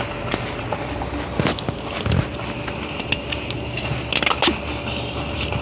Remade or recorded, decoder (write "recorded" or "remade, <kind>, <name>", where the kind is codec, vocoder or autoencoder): recorded